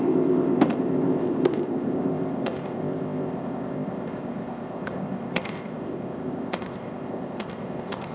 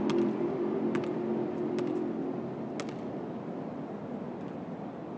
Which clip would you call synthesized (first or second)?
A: first